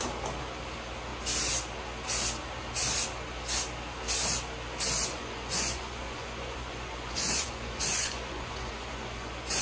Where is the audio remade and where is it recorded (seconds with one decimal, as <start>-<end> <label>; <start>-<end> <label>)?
0.0-5.0 recorded; 5.0-9.6 remade